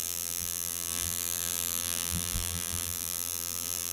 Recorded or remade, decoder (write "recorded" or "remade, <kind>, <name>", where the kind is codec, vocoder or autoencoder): remade, vocoder, BigVGAN v2